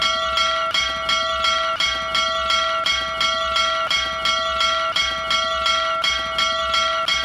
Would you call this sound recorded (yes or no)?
yes